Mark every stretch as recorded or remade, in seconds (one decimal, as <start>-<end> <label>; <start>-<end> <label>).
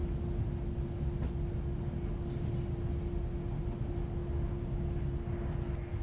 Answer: 0.0-6.0 recorded